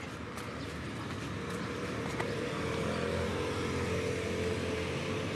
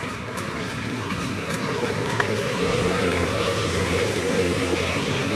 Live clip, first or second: first